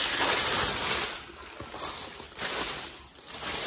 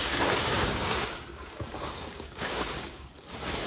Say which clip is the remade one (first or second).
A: second